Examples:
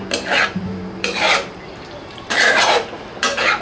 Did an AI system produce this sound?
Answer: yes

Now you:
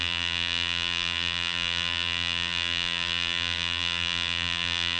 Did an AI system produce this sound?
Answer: yes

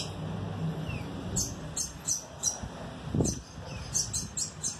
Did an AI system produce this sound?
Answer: no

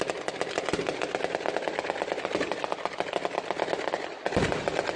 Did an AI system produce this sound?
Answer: no